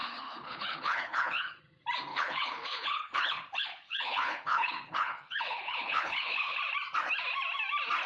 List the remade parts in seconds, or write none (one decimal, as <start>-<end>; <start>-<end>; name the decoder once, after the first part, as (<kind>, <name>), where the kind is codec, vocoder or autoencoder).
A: 0.0-1.6 (codec, HILCodec); 2.1-6.6